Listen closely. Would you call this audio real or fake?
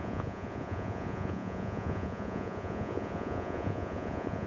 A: fake